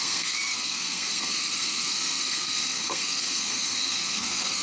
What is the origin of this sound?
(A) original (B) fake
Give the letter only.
B